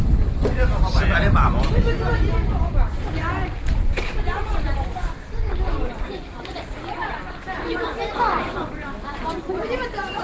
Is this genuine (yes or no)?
no